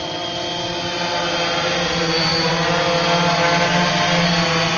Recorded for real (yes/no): no